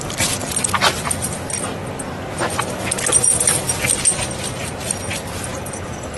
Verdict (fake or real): real